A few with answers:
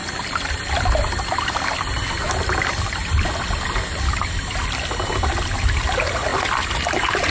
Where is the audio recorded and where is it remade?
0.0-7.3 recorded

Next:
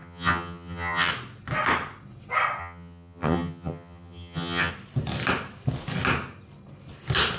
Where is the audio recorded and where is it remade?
0.0-1.1 remade; 1.1-2.6 recorded; 2.6-4.7 remade; 4.7-7.4 recorded